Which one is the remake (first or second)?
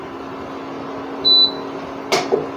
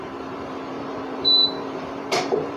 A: second